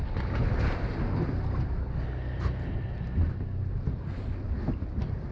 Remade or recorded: recorded